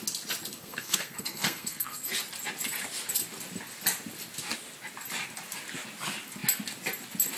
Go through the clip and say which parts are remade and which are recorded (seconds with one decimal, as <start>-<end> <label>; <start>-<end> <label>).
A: 0.0-0.6 recorded; 0.6-2.0 remade; 2.0-7.4 recorded